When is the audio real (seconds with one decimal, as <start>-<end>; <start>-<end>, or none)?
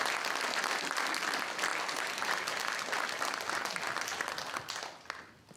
0.0-1.7; 3.0-3.7; 4.3-5.6